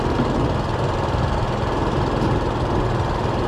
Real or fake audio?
real